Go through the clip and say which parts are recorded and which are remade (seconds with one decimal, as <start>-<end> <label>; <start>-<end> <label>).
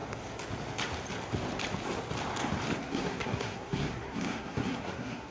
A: 0.0-2.8 recorded; 2.8-5.3 remade